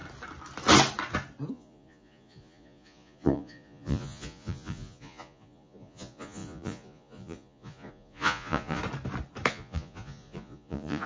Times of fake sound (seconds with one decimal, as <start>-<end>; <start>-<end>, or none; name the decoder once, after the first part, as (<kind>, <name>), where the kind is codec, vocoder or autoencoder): 1.5-8.8 (vocoder, Vocos); 9.5-11.1